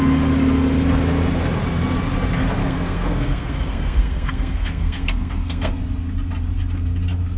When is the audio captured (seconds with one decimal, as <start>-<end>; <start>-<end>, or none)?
0.0-2.6; 5.8-7.4